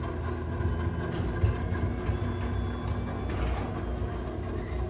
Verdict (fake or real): real